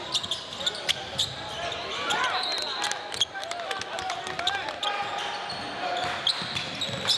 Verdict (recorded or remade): recorded